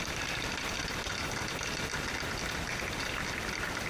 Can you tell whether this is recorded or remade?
recorded